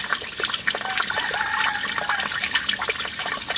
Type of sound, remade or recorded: recorded